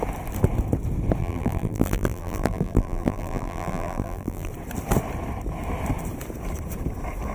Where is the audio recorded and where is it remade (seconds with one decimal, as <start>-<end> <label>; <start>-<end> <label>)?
0.0-1.2 recorded; 1.2-4.5 remade; 4.5-7.3 recorded

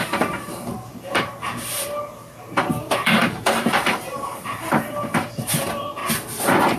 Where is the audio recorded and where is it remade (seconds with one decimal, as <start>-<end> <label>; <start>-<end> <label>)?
0.0-6.0 remade; 6.0-6.8 recorded